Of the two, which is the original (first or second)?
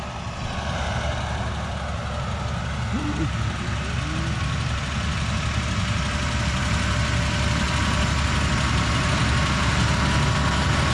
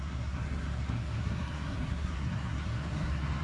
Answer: first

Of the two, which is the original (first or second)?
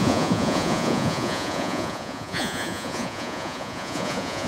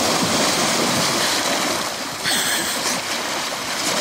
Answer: second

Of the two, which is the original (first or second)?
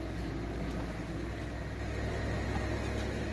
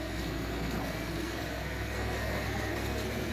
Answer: first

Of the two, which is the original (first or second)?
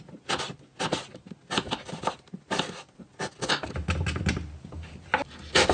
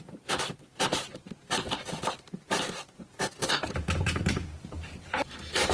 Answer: first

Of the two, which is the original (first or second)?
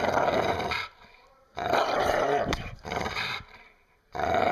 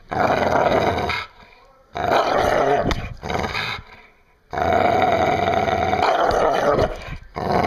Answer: second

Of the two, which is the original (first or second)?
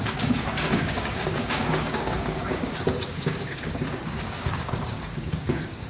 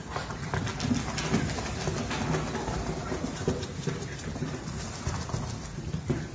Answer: second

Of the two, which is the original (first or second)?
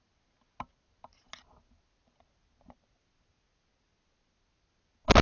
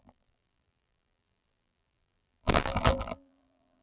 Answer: first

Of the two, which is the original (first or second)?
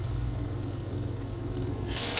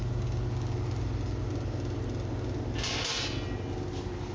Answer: second